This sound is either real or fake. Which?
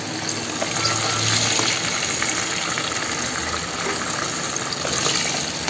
real